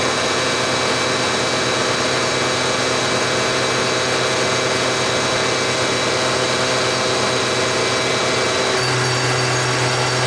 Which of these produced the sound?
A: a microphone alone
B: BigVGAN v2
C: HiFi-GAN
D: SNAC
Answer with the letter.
A